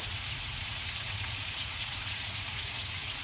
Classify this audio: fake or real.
fake